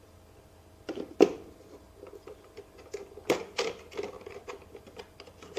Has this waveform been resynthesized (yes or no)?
no